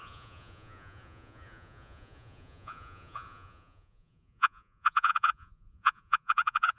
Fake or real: fake